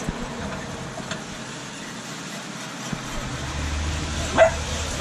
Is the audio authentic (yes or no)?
yes